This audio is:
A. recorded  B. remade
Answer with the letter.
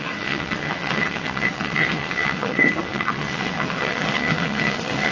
B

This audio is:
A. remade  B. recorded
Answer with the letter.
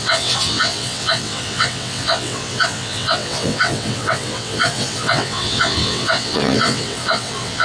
A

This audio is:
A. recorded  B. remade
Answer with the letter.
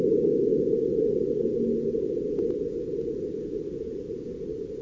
A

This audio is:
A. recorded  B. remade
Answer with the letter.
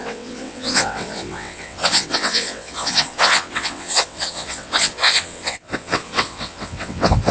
B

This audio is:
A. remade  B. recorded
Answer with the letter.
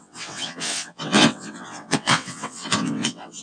A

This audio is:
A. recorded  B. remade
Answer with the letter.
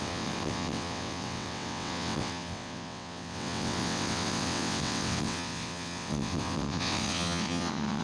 B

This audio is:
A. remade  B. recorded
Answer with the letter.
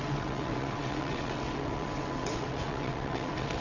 A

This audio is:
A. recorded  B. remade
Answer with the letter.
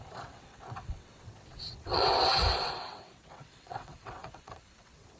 B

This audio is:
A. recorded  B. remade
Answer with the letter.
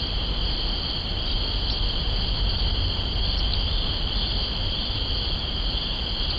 A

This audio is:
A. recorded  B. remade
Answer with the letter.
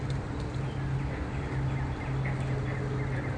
A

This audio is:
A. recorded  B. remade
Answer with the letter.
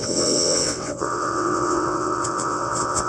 B